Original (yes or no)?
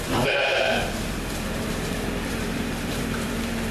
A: no